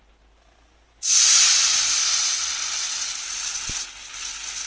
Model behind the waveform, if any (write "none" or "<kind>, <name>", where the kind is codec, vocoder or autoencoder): none